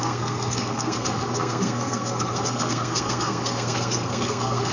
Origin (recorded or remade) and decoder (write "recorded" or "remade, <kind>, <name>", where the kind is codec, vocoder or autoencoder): remade, codec, SNAC